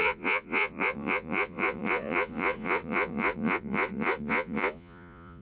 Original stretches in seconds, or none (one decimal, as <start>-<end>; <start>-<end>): none